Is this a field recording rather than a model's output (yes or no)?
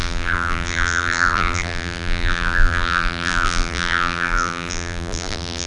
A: no